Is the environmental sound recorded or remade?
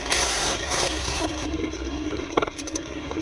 remade